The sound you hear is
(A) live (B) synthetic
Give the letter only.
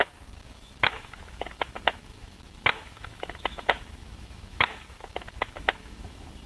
B